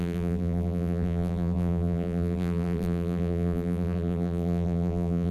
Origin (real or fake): fake